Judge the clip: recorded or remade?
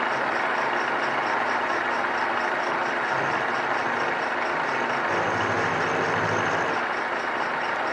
recorded